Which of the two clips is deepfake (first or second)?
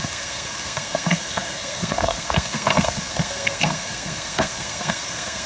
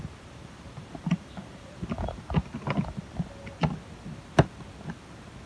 first